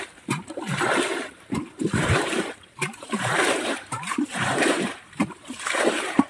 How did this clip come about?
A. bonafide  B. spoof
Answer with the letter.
B